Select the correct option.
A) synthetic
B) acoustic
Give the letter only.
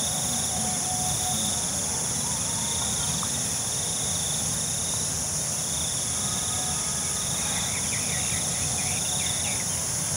B